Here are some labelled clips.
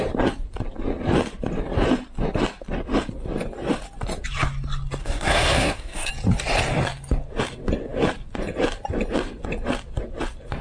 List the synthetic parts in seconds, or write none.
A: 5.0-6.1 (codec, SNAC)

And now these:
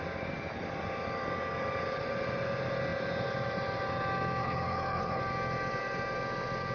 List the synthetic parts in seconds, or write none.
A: 4.4-5.2 (codec, HILCodec)

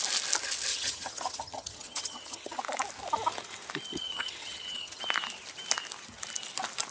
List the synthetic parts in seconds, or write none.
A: 0.7-2.6 (vocoder, HiFi-GAN); 3.9-5.0

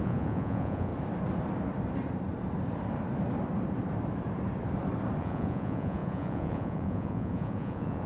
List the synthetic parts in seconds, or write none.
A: 0.0-0.9 (vocoder, Vocos); 5.2-8.1